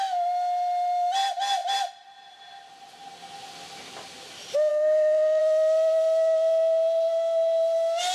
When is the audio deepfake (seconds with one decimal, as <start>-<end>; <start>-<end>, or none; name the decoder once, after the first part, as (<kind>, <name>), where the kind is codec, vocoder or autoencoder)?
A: 4.7-5.4 (codec, SNAC)